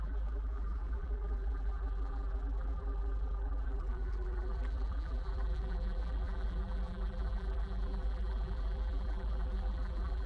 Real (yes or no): no